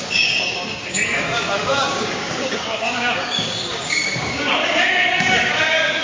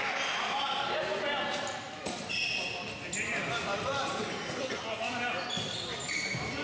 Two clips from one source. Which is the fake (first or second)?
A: first